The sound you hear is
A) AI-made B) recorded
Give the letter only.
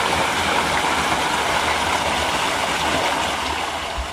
B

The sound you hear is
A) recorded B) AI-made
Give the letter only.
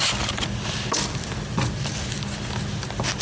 A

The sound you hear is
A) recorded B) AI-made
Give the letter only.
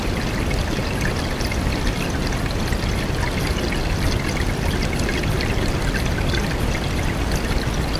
A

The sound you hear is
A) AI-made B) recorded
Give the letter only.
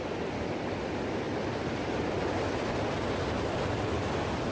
B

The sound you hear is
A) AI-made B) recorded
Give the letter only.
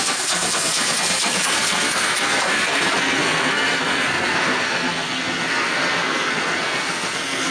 A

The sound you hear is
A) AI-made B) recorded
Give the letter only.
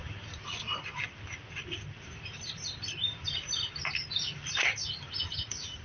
A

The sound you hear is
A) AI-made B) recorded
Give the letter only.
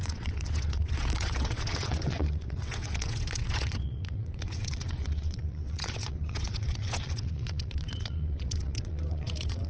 A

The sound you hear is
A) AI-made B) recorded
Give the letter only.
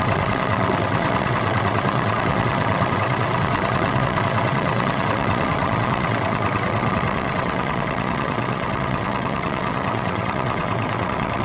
A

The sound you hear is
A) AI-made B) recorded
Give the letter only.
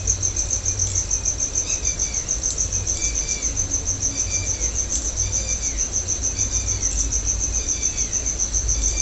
B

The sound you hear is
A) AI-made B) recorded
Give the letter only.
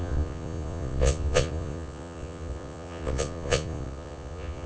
A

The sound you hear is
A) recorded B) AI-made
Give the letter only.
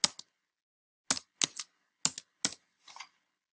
A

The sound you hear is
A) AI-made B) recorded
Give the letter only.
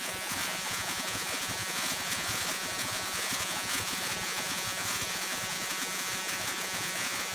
A